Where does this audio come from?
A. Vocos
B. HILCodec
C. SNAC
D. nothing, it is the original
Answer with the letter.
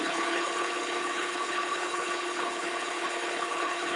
B